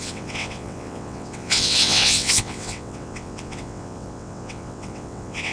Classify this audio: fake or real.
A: fake